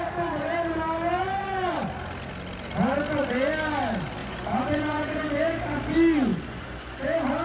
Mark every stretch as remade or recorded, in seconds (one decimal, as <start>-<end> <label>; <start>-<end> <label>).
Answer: 0.0-1.2 recorded; 1.2-1.8 remade; 1.8-4.2 recorded; 4.2-5.2 remade; 5.2-6.3 recorded; 6.3-7.0 remade; 7.0-7.4 recorded